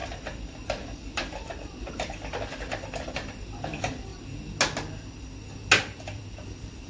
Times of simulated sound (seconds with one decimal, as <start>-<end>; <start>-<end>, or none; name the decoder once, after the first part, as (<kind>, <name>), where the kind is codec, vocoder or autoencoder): 0.0-4.1 (vocoder, BigVGAN v2); 5.8-6.9